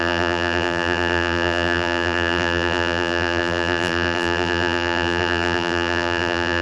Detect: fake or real fake